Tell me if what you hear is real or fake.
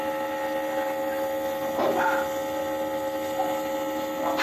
real